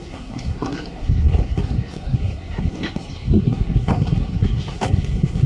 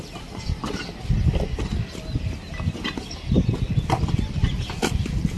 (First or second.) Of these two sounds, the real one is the second